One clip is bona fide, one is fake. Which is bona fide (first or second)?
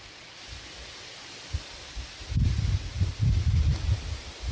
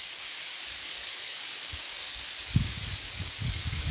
first